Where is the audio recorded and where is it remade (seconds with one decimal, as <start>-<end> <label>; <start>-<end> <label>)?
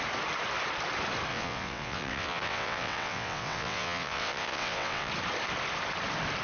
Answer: 0.0-1.3 recorded; 1.3-5.1 remade; 5.1-6.4 recorded